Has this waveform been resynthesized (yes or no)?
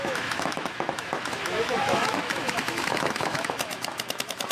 yes